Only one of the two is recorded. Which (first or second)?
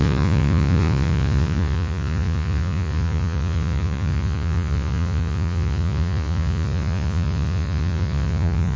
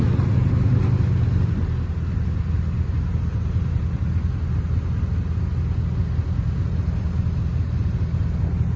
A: second